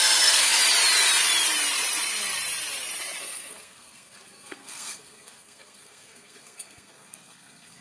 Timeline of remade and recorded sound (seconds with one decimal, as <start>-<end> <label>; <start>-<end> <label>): 0.0-0.6 remade; 0.6-3.2 recorded; 3.2-7.8 remade